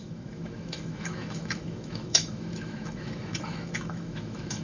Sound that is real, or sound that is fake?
fake